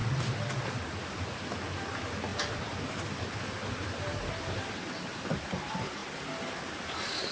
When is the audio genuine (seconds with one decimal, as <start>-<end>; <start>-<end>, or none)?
0.0-7.3